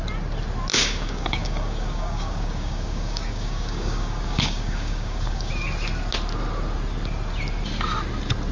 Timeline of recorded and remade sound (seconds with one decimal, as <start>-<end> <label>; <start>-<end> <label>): 0.0-0.7 recorded; 0.7-5.5 remade; 5.5-8.5 recorded